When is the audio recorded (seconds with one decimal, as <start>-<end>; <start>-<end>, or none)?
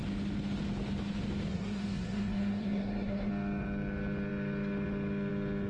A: 0.0-1.5; 3.3-5.7